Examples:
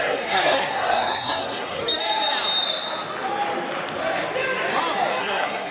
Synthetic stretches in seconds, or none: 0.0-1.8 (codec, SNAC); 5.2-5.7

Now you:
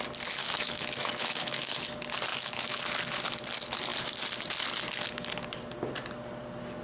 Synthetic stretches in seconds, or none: 0.4-1.8 (autoencoder, DAC-VAE); 2.3-2.8

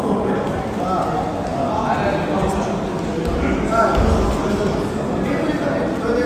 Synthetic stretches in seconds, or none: none